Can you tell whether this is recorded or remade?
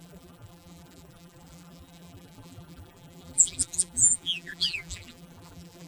remade